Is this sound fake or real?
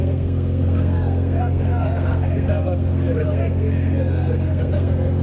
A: fake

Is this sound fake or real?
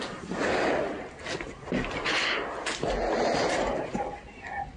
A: real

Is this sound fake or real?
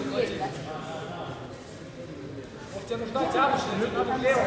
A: real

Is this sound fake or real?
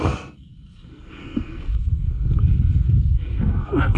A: fake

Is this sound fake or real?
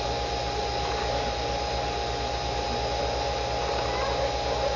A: real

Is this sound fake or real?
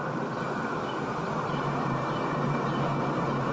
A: fake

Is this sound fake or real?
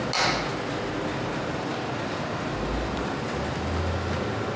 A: real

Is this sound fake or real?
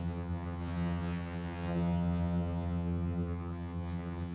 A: fake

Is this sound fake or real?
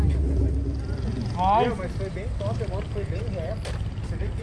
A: real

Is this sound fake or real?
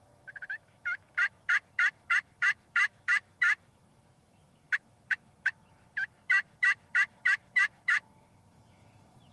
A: fake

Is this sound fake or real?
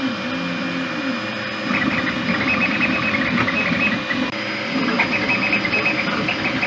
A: real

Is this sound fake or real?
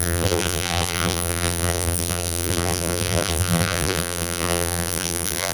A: fake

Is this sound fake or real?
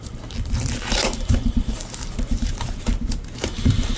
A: fake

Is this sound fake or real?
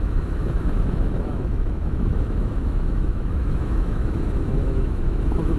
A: fake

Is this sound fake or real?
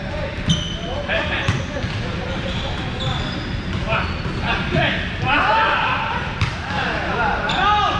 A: real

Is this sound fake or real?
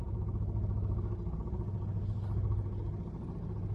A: real